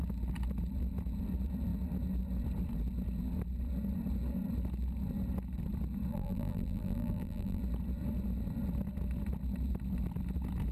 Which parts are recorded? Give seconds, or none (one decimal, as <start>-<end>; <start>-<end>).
0.0-6.1; 7.6-10.7